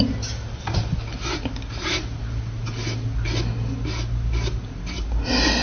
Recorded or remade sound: recorded